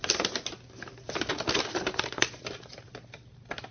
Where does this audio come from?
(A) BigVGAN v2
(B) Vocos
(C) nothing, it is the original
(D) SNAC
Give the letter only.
C